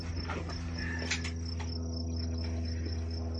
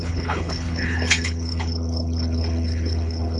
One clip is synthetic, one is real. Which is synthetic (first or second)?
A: second